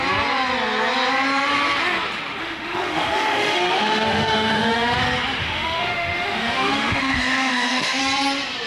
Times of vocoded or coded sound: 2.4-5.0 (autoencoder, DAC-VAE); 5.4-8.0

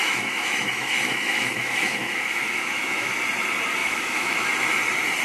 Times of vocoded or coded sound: 0.0-3.1 (autoencoder, DAC-VAE); 3.8-4.5

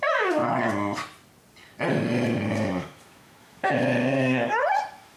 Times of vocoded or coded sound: 0.0-0.4 (autoencoder, DAC-VAE); 2.5-5.2

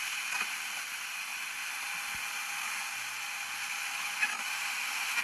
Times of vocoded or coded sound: 3.8-4.4 (autoencoder, DAC-VAE)

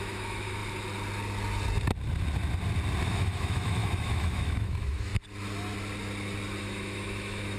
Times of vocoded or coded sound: 0.0-0.6 (autoencoder, DAC-VAE); 3.0-5.1; 6.6-7.6

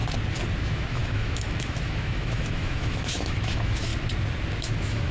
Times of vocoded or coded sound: 0.6-3.9 (autoencoder, DAC-VAE); 4.6-5.1

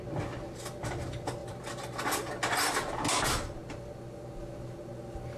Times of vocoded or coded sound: none